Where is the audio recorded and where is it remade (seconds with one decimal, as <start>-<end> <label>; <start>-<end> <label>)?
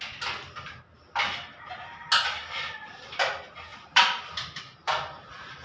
0.0-2.4 recorded; 2.4-3.3 remade; 3.3-3.7 recorded; 3.7-4.6 remade; 4.6-5.6 recorded